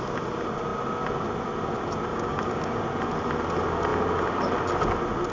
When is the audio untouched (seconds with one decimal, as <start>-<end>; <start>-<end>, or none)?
0.0-2.1; 2.8-5.3